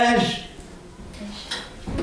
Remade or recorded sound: recorded